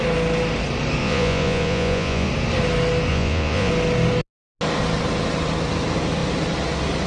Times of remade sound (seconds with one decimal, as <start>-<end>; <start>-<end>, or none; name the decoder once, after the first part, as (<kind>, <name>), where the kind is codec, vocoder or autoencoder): 1.0-2.3 (vocoder, Vocos); 3.1-3.7